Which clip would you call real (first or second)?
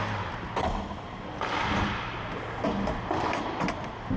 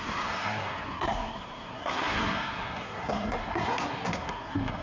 first